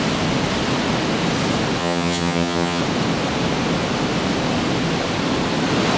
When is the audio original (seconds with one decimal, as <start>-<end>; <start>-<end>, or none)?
0.0-1.8; 2.8-6.0